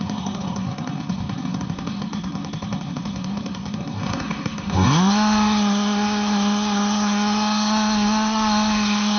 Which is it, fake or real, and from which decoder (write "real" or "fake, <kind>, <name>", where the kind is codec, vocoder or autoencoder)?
fake, codec, SNAC